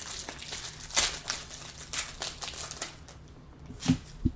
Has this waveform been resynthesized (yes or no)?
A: no